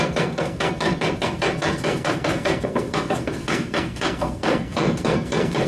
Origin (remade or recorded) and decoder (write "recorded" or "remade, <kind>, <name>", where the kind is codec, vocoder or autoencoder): remade, codec, SNAC